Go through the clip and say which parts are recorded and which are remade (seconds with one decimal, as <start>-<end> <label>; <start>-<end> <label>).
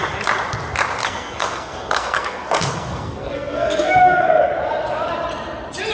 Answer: 0.0-1.0 recorded; 1.0-4.5 remade; 4.5-5.9 recorded